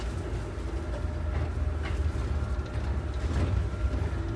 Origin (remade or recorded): recorded